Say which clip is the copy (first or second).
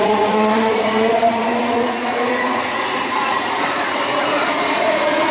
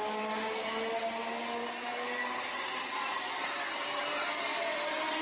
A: first